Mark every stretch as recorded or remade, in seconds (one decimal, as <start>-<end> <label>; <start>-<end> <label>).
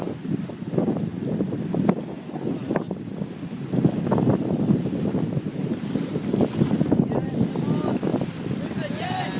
0.0-9.4 recorded